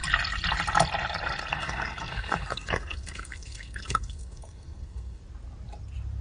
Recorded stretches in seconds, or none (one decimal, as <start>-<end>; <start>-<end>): 0.0-1.5; 5.2-6.2